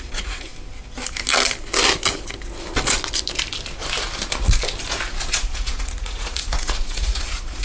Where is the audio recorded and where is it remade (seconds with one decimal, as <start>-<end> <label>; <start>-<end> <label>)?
0.0-0.5 remade; 0.5-5.1 recorded; 5.1-7.6 remade